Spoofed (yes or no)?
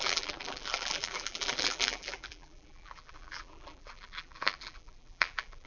yes